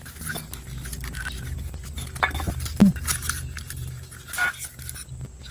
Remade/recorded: recorded